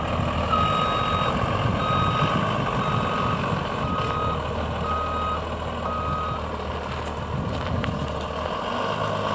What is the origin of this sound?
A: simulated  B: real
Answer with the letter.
B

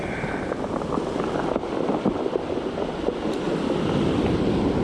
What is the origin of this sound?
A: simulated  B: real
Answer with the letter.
B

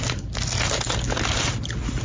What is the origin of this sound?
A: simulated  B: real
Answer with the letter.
B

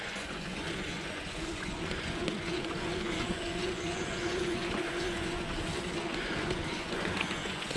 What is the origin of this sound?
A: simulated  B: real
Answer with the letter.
A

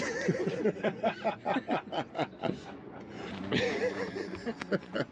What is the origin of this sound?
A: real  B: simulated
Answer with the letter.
B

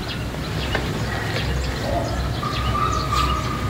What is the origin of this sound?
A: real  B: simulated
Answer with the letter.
A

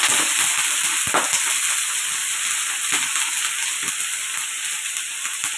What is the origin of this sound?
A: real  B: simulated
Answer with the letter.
A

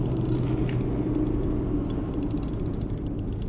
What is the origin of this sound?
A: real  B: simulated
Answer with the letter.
A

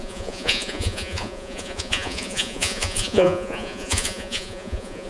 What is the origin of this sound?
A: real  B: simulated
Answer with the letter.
B